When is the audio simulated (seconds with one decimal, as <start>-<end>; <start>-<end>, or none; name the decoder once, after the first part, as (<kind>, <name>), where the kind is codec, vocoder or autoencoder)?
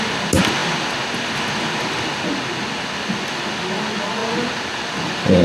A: none